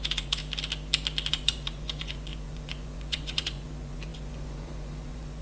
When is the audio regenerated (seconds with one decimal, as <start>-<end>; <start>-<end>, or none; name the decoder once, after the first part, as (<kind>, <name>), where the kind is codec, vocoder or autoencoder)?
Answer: 0.0-0.4 (vocoder, Vocos); 1.3-5.4